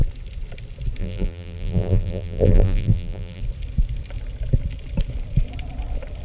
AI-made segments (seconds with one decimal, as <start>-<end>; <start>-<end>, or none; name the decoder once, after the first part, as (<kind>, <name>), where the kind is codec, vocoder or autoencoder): 1.0-3.4 (vocoder, BigVGAN v2)